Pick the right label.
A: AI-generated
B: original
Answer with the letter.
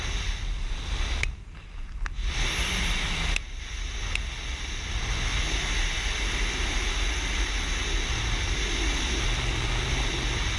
B